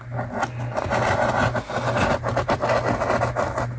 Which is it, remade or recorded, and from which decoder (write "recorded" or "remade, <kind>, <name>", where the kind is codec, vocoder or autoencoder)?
recorded